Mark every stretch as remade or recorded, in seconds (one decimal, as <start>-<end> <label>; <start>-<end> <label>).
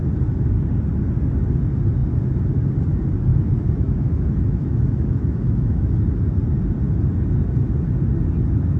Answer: 0.0-3.3 recorded; 3.3-6.0 remade; 6.0-8.8 recorded